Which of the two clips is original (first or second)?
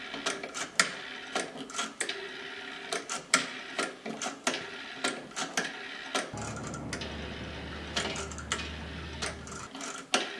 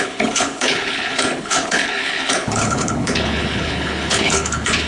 first